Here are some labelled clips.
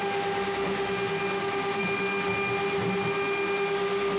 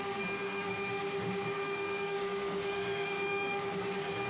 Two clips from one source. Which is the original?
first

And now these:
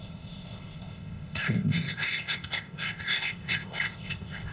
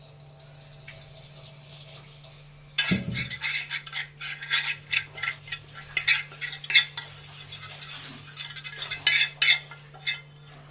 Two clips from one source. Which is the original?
second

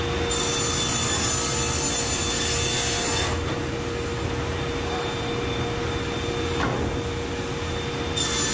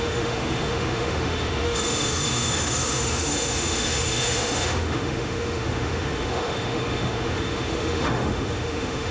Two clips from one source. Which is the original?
first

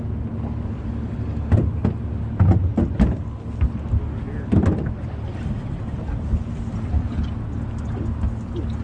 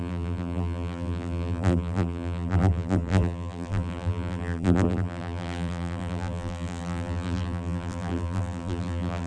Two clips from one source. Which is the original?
first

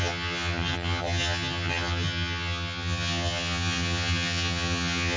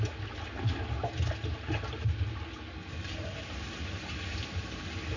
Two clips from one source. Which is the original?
second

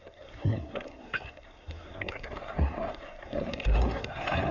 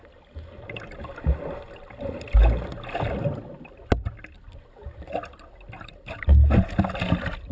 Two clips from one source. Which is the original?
second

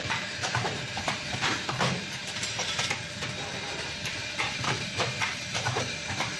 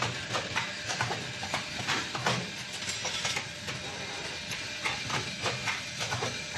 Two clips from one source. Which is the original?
second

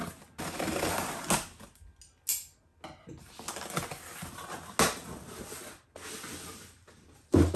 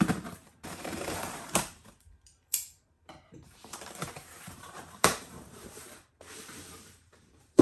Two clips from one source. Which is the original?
first